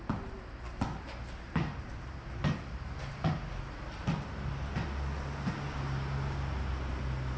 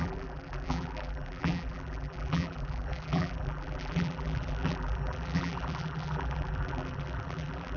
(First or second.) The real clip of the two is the first